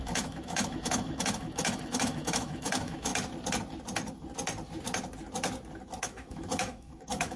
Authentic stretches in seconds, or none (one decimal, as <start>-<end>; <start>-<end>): 3.1-6.0

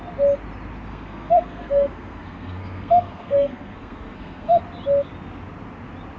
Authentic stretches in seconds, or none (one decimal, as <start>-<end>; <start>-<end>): 0.0-0.9; 4.6-6.2

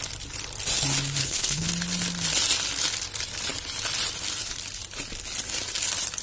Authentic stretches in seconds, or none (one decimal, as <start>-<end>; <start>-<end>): 0.0-1.2; 1.7-6.2

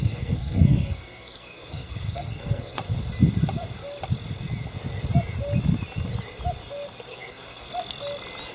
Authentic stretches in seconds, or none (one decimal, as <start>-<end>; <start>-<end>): 2.8-7.1; 7.7-8.5

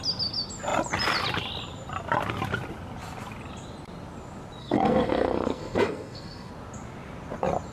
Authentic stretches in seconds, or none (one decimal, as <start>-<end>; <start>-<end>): 0.0-4.6; 6.5-7.7